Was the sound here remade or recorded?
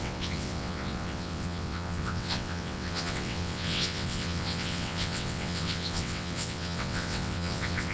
remade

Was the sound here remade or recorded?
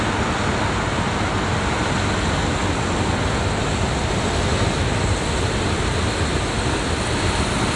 recorded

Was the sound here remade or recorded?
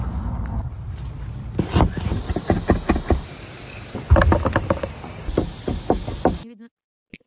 recorded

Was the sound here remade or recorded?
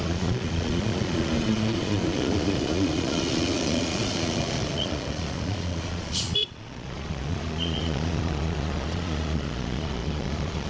remade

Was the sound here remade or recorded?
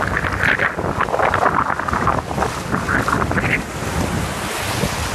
recorded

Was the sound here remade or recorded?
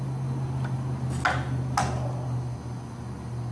recorded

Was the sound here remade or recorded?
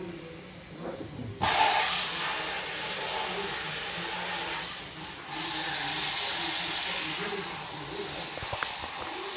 recorded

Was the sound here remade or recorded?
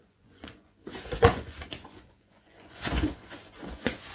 remade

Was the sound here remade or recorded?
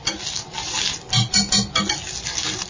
recorded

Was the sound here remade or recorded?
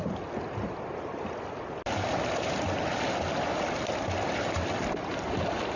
recorded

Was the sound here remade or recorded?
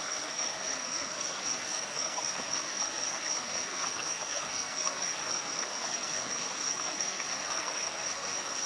remade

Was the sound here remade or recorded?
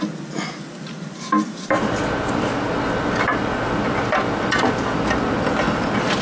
recorded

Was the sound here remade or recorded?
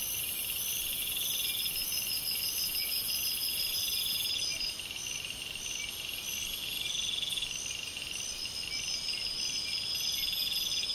recorded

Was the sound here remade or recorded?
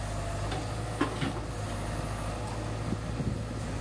recorded